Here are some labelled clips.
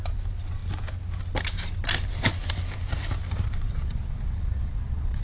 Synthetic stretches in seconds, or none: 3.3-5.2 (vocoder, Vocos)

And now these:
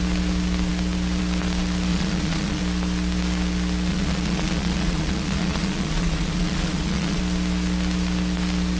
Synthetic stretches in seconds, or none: 1.9-2.6 (vocoder, Vocos); 3.9-7.2

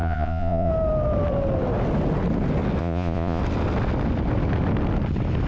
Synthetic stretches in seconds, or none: 0.0-0.7 (vocoder, Vocos); 2.8-3.4

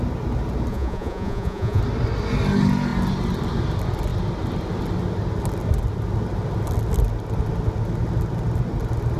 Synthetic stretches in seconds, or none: 0.7-1.8 (vocoder, Vocos)

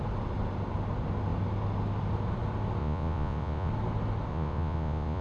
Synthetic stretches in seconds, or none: 2.8-3.7 (vocoder, Vocos); 4.3-5.2